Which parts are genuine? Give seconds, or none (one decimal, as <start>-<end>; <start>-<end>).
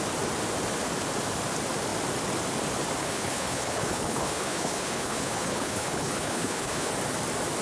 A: 0.0-3.0; 6.9-7.6